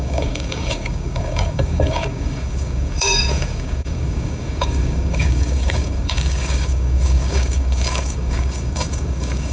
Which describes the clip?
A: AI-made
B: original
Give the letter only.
A